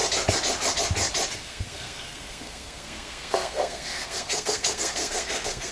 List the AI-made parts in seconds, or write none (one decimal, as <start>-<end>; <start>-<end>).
1.3-5.7